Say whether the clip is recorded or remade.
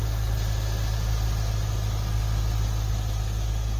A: recorded